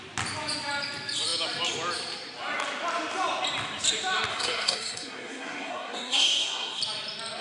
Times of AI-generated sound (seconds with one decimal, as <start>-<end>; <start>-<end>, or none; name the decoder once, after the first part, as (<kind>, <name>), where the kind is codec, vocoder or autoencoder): 4.3-6.8 (codec, SNAC)